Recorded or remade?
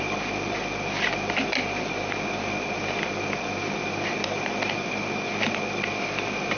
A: recorded